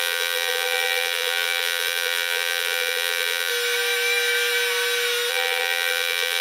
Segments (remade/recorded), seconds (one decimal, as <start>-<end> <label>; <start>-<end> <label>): 0.0-3.5 remade; 3.5-5.3 recorded; 5.3-6.4 remade